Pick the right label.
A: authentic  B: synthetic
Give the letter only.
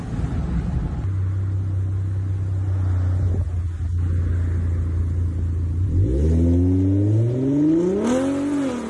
A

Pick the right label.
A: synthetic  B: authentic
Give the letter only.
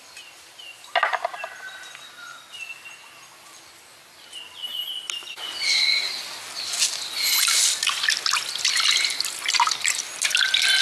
B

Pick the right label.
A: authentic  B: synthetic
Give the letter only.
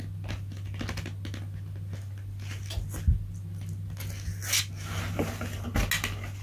A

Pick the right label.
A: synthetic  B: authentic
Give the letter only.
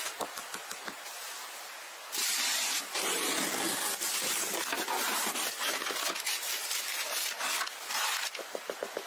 B